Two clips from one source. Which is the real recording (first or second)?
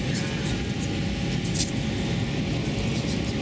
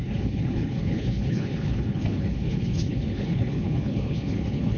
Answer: first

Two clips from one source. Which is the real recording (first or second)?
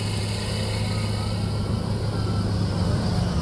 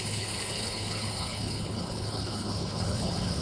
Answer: first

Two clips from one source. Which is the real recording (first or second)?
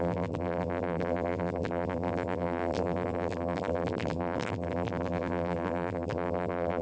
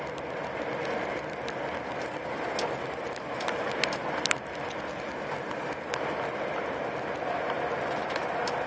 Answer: second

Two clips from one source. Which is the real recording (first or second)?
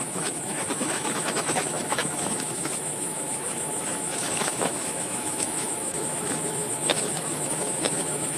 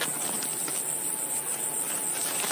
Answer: second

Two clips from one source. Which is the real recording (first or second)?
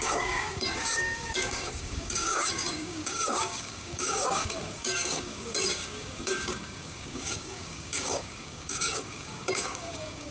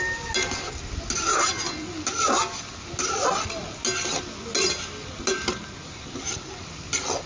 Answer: second